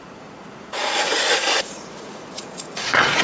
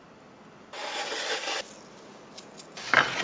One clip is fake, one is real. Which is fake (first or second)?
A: first